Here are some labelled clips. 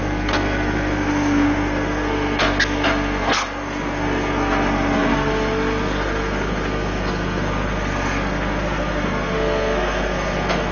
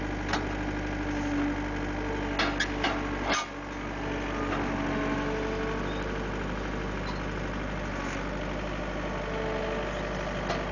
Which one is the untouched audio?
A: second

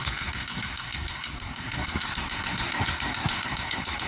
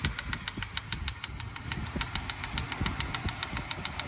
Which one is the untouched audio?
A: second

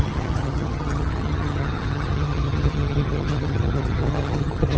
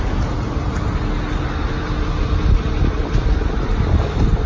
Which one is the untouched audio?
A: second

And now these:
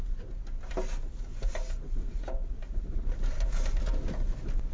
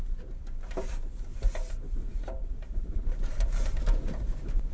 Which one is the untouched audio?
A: first